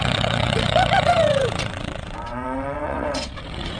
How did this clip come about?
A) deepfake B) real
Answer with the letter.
A